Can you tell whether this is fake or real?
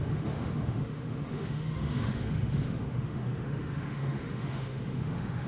fake